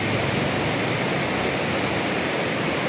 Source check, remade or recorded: recorded